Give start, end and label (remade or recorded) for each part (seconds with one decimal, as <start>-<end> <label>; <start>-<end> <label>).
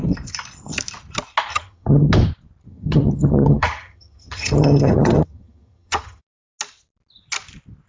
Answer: 0.0-1.5 recorded; 1.5-2.1 remade; 2.1-2.7 recorded; 2.7-6.2 remade; 6.2-7.9 recorded